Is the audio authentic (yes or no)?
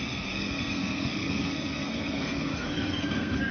no